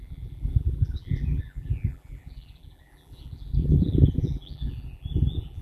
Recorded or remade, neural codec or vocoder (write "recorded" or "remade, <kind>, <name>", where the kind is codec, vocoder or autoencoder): remade, vocoder, BigVGAN v2